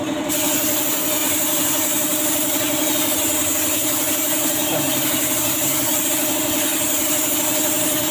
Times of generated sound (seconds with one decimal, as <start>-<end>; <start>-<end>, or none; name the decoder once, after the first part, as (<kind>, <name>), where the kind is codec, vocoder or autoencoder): 1.2-6.1 (vocoder, BigVGAN v2); 6.7-7.3

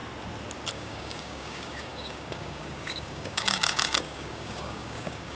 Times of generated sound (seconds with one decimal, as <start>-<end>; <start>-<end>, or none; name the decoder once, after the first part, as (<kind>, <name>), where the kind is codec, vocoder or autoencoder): 0.7-5.3 (codec, DAC)

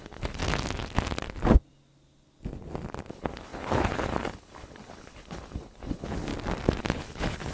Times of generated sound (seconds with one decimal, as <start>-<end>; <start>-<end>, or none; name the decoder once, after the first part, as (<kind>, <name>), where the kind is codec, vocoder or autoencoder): 0.0-0.4 (codec, HILCodec); 3.1-6.3; 6.8-7.5

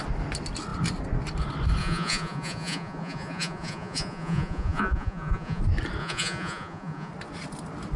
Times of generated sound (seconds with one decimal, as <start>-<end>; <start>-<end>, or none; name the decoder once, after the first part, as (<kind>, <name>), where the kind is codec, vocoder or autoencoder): 1.8-5.6 (vocoder, Vocos); 6.0-7.1

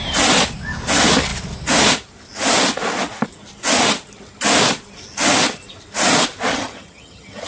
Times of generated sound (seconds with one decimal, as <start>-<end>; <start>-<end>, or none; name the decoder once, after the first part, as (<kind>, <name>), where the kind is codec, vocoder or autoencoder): 6.5-7.5 (vocoder, HiFi-GAN)

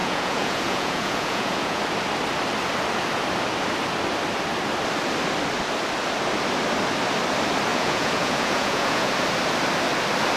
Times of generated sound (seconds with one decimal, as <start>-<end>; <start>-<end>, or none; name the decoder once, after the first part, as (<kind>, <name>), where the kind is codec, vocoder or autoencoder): 0.0-1.8 (vocoder, Vocos); 7.7-9.1

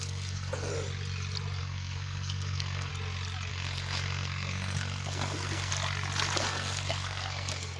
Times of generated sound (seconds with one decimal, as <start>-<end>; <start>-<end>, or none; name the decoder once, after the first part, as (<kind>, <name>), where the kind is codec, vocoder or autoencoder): 0.0-0.7 (codec, SNAC); 1.6-2.9; 3.5-5.7; 6.4-7.8